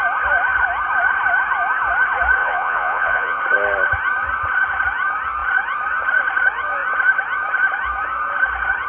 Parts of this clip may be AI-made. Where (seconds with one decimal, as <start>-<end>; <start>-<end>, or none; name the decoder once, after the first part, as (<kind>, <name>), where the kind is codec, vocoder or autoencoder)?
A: 2.4-3.4 (vocoder, Vocos)